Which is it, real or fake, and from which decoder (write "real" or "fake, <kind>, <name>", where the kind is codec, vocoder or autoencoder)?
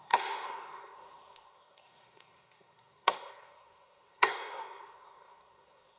fake, codec, SNAC